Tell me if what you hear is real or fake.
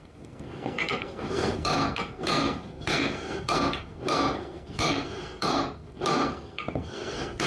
fake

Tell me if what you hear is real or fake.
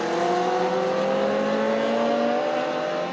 real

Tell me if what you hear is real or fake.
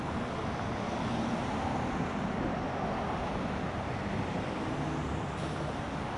real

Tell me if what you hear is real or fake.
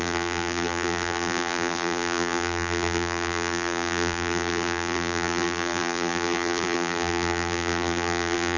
fake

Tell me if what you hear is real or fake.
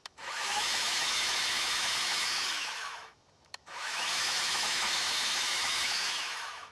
fake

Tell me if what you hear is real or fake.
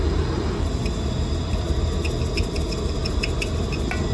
real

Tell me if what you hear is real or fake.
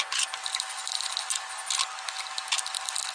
real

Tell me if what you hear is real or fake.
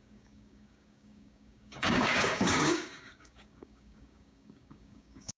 fake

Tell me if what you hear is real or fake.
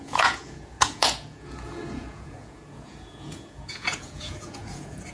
fake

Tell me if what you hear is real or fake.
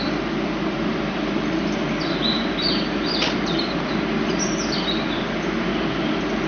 fake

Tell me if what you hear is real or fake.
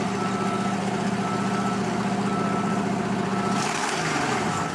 real